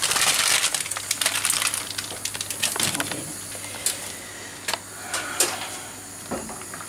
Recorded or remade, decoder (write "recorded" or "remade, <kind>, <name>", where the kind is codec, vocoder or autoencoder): recorded